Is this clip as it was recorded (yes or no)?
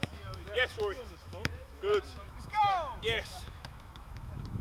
no